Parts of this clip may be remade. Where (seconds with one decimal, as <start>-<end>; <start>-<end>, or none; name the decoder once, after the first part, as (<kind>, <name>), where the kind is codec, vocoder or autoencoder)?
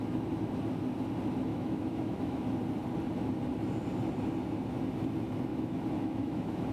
1.5-2.4 (autoencoder, DAC-VAE); 5.5-6.7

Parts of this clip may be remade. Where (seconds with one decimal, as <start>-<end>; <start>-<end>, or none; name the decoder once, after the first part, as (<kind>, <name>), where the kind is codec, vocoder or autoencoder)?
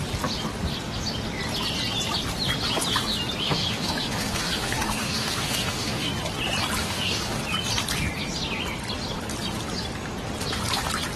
3.4-6.1 (autoencoder, DAC-VAE); 6.8-7.4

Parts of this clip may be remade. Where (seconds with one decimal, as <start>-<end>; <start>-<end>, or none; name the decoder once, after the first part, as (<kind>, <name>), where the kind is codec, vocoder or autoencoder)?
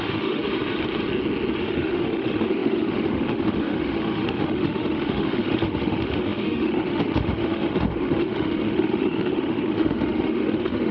0.0-0.4 (autoencoder, DAC-VAE); 1.6-10.9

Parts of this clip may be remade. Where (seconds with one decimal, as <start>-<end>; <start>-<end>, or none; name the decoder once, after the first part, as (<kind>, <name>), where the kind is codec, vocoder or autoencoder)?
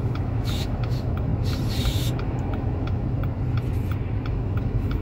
0.0-1.3 (autoencoder, DAC-VAE); 1.8-3.2; 4.3-5.0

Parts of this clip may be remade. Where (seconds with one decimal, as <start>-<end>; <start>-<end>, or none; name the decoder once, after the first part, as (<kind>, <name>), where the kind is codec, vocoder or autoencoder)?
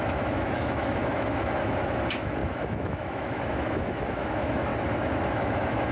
0.0-4.7 (autoencoder, DAC-VAE); 5.3-5.9